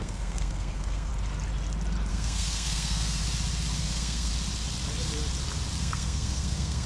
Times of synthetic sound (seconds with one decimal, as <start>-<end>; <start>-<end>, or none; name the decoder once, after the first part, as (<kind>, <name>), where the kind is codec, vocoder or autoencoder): 0.0-1.1 (codec, SNAC); 2.1-3.2; 3.8-4.3; 5.8-6.9